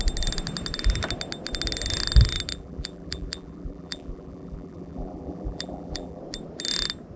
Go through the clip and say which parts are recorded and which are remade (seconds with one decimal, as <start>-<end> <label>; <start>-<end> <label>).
0.0-2.5 recorded; 2.5-6.2 remade; 6.2-7.2 recorded